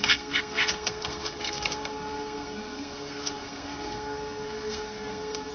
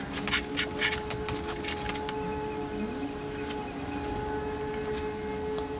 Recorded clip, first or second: second